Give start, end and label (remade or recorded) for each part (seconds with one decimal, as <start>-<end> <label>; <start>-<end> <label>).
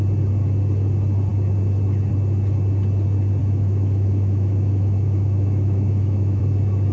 0.0-3.4 recorded; 3.4-6.4 remade; 6.4-6.9 recorded